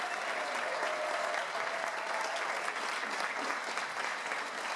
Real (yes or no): yes